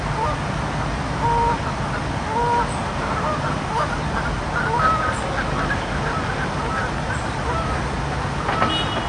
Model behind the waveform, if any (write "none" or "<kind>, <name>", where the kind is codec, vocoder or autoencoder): none